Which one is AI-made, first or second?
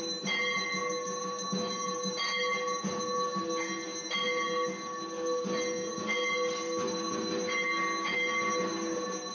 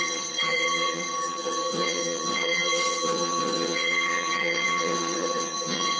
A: second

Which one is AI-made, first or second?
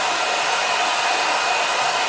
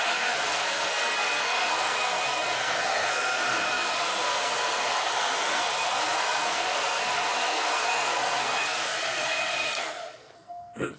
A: second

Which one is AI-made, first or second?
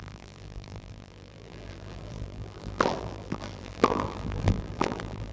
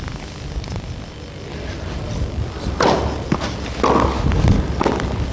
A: first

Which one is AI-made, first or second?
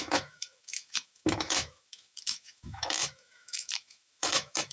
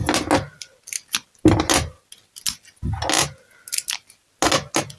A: first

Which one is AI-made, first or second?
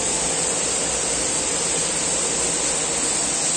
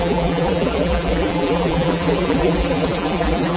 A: second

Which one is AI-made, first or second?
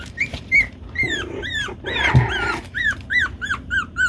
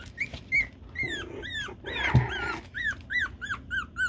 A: first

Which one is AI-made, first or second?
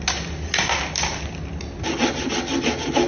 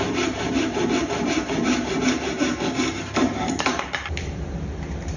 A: second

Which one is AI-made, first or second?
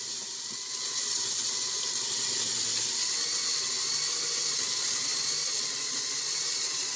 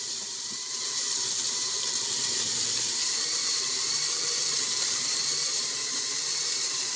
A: second